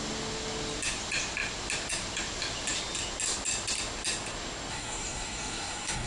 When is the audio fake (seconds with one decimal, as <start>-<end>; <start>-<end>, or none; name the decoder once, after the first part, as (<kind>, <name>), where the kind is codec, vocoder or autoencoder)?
4.7-6.1 (codec, DAC)